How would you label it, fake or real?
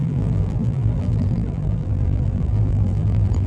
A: fake